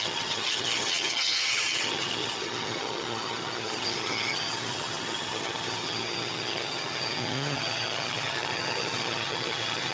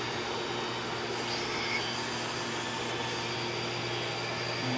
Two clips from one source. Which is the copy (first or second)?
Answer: first